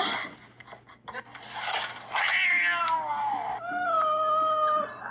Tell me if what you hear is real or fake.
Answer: real